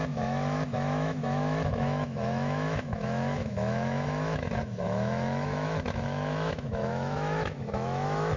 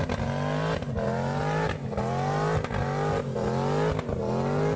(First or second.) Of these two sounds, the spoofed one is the first